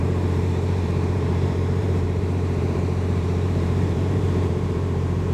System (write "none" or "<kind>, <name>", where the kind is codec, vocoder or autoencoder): vocoder, BigVGAN v2